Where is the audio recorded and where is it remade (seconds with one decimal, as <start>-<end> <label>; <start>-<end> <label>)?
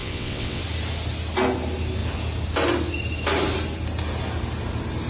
0.0-0.6 remade; 0.6-5.1 recorded